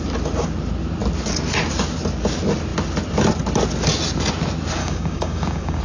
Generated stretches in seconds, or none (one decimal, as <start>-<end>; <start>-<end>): 4.8-5.8